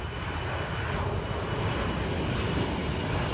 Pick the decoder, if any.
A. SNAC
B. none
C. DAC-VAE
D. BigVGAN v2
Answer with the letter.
B